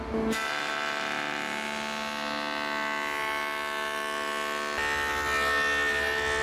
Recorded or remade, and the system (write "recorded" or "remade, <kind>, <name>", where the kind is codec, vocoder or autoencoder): recorded